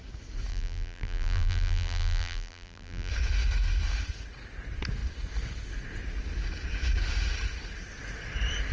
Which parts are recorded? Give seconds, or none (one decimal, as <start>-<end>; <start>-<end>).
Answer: 0.0-0.5; 3.1-8.7